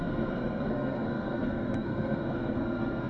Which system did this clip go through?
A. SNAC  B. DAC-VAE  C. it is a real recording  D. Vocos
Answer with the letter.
A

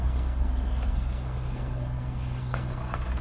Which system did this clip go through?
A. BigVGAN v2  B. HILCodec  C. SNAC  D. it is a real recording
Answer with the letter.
C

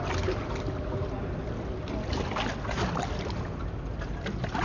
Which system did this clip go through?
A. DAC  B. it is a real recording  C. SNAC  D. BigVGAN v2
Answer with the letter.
B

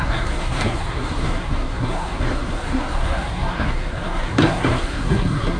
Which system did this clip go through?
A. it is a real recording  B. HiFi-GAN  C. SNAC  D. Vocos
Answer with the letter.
C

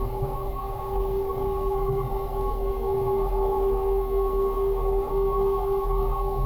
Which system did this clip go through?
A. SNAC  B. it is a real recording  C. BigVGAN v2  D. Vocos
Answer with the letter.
A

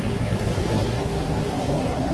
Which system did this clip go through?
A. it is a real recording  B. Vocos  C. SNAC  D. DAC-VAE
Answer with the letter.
C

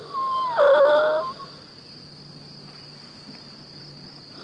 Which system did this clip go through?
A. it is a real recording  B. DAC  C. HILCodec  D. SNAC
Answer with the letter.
A